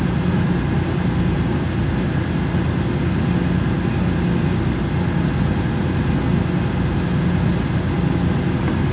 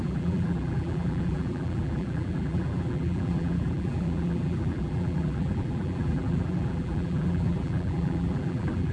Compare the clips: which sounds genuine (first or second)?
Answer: first